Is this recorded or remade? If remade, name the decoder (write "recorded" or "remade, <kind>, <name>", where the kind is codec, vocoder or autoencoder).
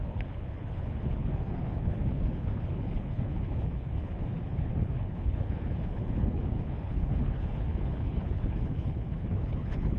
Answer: remade, codec, HILCodec